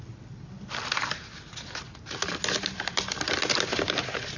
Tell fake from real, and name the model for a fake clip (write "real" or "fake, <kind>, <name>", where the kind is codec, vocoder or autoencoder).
real